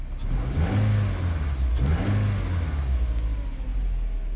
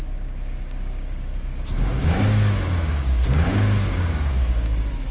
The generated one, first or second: second